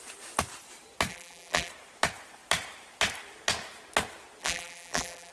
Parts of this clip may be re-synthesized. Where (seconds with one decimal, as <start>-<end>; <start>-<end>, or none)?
1.1-1.7; 4.4-5.3